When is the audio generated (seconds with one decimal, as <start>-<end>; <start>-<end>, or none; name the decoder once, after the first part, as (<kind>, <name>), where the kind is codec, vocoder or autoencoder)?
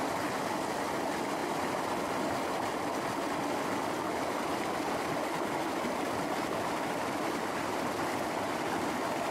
1.4-1.9 (vocoder, BigVGAN v2)